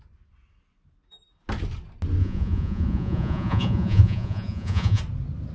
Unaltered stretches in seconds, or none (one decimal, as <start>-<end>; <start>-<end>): 0.0-2.2; 5.0-5.5